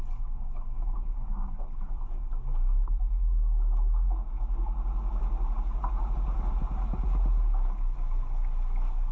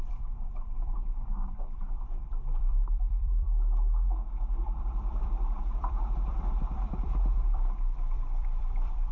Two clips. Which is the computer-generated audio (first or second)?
second